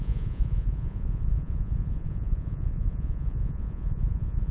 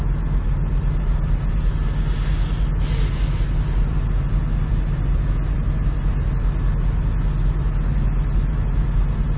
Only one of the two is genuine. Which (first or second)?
second